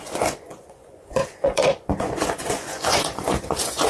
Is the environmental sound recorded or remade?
remade